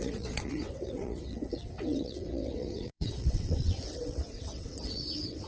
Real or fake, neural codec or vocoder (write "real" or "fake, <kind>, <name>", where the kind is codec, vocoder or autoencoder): fake, vocoder, WaveNeXt